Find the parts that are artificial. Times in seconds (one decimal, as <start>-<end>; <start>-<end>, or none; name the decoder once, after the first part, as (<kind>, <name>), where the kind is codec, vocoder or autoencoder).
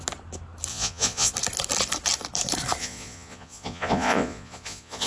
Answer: 0.7-1.3 (vocoder, Vocos); 2.8-5.1